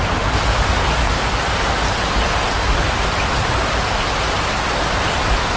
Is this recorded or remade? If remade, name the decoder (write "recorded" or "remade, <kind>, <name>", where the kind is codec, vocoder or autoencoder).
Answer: recorded